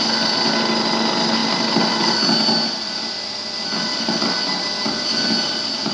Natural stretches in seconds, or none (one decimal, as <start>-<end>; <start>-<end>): 0.0-5.9